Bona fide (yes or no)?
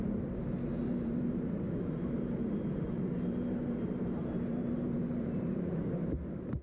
no